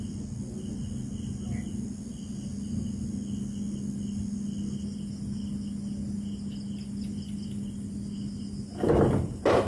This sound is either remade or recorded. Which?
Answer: recorded